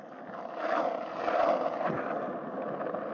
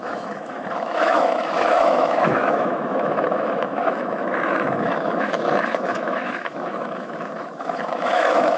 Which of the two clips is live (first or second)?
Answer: first